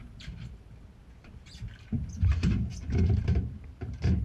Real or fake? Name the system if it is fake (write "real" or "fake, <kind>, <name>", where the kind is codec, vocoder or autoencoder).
real